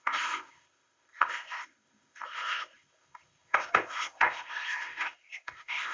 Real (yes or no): no